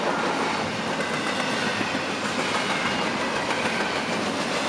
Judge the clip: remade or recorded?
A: recorded